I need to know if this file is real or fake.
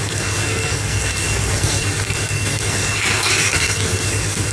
fake